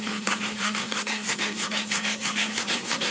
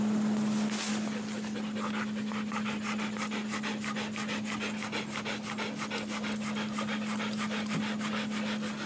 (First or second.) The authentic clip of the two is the second